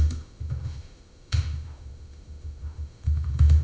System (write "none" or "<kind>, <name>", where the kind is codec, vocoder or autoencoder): autoencoder, DAC-VAE